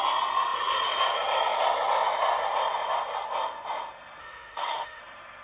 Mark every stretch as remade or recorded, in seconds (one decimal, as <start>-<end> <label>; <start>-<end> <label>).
0.0-4.2 recorded; 4.2-5.0 remade; 5.0-5.4 recorded